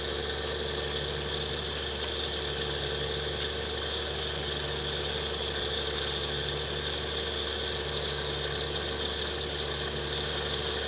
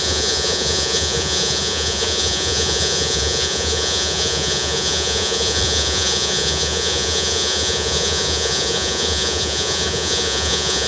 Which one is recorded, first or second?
first